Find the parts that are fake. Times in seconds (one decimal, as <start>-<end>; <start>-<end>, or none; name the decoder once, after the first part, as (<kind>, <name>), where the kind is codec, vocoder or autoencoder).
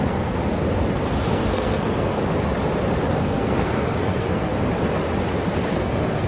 0.0-0.4 (codec, SNAC); 1.3-2.1; 3.2-4.5; 5.7-6.3